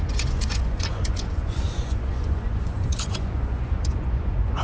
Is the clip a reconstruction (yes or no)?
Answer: yes